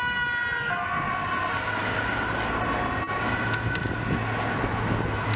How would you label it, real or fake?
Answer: real